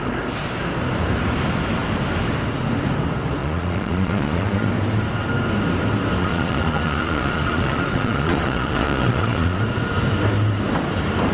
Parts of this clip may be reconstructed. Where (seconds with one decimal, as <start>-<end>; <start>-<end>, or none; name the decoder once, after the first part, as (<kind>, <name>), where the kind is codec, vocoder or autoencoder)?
3.4-4.7 (vocoder, Vocos); 6.2-9.6